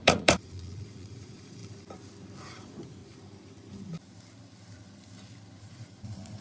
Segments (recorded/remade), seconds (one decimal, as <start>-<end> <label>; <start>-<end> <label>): 0.0-1.6 remade; 1.6-2.4 recorded; 2.4-3.0 remade; 3.0-5.6 recorded; 5.6-6.4 remade